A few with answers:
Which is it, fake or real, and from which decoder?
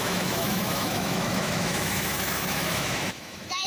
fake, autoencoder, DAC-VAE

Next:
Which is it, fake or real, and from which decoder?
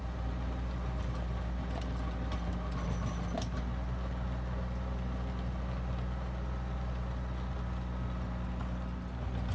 real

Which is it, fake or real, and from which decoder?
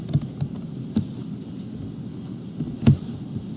real